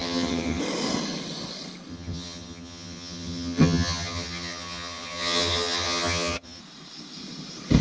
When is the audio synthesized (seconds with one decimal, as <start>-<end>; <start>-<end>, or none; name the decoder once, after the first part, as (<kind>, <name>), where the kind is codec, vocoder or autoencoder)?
0.0-0.6 (vocoder, HiFi-GAN); 1.9-6.6